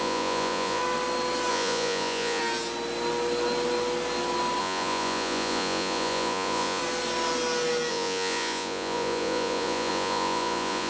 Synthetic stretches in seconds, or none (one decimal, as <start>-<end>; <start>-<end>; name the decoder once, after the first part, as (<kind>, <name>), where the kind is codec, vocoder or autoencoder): 0.0-0.8 (vocoder, Vocos); 1.5-2.4; 4.6-6.8; 7.9-10.9